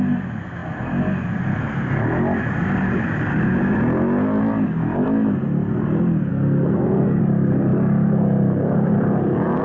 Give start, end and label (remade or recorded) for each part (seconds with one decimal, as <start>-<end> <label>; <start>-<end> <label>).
0.0-6.3 recorded; 6.3-7.2 remade; 7.2-9.6 recorded